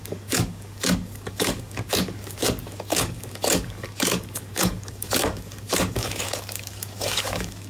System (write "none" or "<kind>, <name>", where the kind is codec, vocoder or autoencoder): codec, DAC